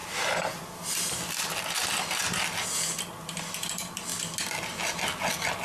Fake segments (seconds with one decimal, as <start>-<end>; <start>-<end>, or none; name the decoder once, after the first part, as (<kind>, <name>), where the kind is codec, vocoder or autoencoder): none